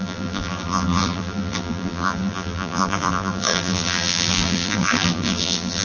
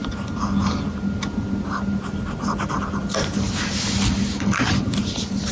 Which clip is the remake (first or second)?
first